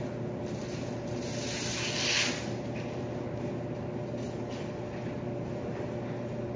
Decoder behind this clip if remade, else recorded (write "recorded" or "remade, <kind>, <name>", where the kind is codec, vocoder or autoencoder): recorded